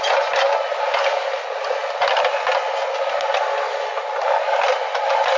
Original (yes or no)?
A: yes